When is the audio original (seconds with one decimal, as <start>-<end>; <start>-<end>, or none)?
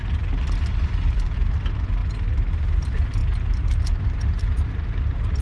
0.0-0.7; 2.0-2.5; 3.2-3.9